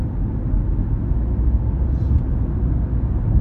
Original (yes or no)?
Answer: yes